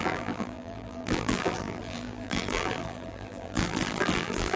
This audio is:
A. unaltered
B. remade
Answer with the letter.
B